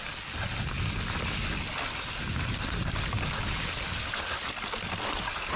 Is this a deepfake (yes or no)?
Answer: no